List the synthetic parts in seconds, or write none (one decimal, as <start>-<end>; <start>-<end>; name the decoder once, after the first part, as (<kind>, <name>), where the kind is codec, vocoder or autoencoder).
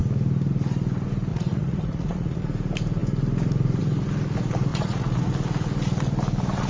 1.3-2.4 (vocoder, Vocos); 4.7-5.3